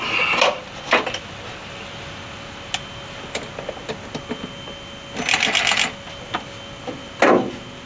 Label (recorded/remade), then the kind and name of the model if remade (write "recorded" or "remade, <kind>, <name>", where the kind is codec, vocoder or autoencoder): recorded